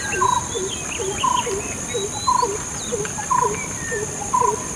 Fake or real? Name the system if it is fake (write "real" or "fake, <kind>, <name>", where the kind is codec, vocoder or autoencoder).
real